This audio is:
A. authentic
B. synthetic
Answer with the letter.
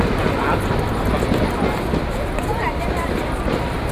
A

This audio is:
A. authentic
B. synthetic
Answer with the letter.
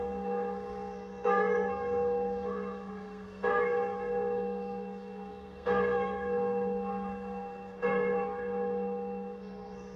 B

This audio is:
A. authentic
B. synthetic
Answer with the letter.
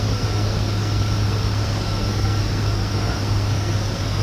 B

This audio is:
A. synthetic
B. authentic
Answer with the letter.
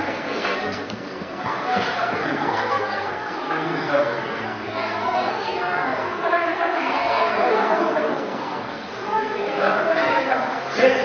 A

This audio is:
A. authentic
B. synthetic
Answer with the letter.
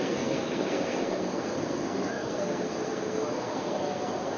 B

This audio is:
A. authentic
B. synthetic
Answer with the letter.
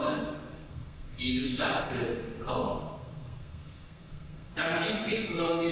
B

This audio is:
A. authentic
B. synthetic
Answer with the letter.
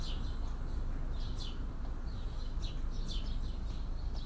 A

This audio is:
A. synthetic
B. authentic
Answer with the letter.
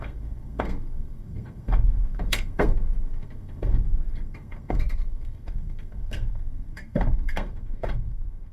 A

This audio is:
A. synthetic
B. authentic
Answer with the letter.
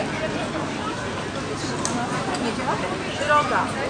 B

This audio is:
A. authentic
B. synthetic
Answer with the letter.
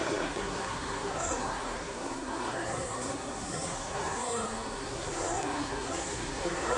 B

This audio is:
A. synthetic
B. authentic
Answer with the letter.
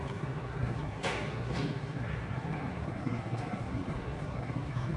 A